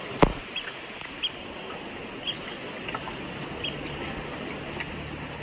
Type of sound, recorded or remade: recorded